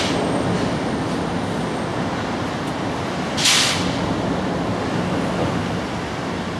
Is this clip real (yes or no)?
yes